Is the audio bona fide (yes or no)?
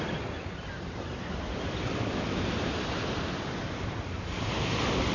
yes